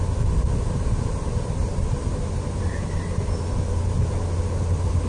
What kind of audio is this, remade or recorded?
recorded